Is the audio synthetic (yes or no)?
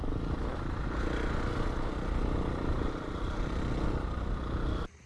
no